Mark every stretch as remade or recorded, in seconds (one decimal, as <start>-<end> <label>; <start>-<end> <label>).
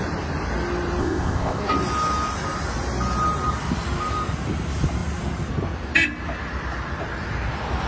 0.0-1.0 recorded; 1.0-1.6 remade; 1.6-7.9 recorded